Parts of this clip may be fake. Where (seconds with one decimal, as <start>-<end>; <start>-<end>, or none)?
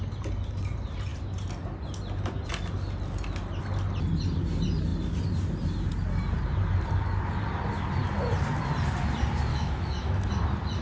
9.5-10.3